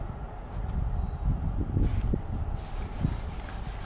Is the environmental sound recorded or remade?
recorded